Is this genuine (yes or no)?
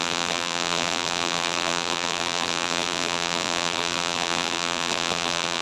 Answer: no